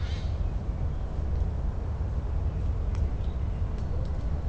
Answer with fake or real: real